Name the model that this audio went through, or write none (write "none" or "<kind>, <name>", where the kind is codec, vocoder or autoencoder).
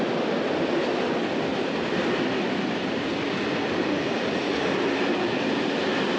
none